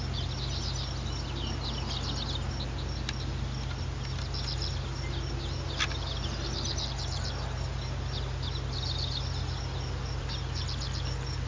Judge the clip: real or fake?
real